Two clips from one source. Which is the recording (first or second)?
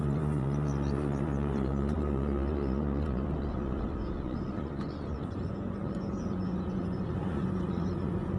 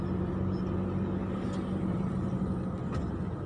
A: second